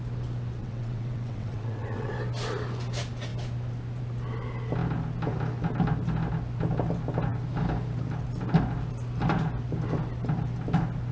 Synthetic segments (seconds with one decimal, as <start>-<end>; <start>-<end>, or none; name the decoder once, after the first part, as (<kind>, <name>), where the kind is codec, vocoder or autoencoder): 0.6-2.1 (vocoder, WaveNeXt)